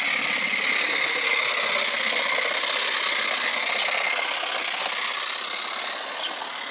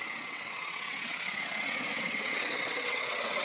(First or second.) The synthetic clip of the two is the second